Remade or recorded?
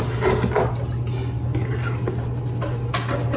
recorded